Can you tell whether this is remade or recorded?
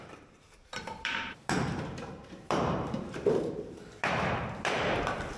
remade